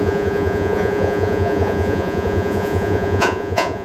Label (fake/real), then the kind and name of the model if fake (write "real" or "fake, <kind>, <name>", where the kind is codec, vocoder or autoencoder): fake, vocoder, Vocos